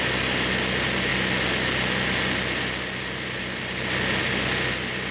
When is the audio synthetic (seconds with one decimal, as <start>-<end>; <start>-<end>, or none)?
none

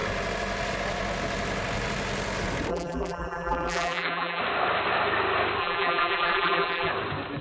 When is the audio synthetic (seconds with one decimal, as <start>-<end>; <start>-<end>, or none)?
2.7-4.4; 5.6-6.9